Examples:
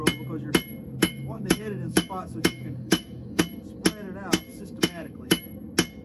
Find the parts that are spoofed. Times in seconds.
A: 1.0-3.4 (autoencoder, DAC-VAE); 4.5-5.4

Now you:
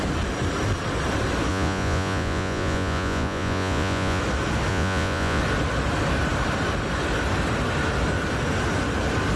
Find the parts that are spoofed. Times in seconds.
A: 1.5-4.2 (vocoder, Vocos); 4.7-5.4